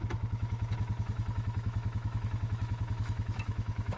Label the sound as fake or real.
fake